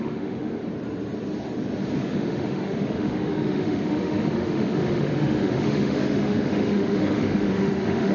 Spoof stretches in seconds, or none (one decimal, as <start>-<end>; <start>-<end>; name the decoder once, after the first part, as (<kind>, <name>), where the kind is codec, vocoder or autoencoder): 0.0-0.6 (autoencoder, DAC-VAE); 2.0-8.1